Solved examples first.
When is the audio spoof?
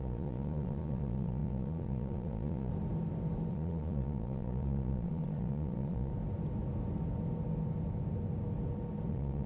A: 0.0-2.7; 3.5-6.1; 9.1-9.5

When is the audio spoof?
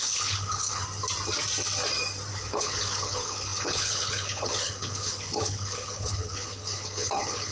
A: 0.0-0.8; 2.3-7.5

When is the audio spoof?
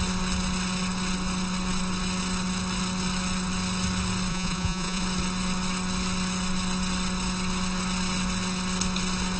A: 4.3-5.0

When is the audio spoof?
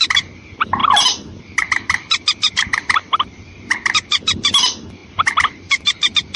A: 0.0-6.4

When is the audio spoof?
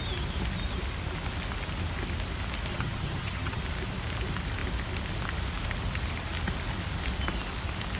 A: 2.7-3.6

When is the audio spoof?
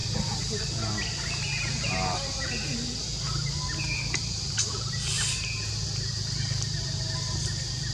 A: none